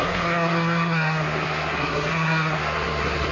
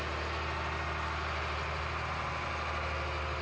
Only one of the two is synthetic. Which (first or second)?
first